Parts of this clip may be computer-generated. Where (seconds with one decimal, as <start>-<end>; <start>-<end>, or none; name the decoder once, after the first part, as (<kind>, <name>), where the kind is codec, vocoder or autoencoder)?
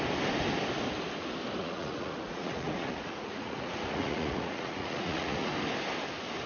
1.6-5.5 (vocoder, Vocos)